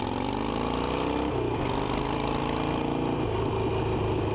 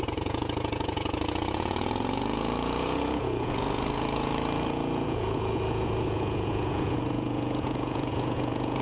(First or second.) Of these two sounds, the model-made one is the second